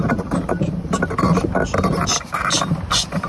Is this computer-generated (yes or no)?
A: no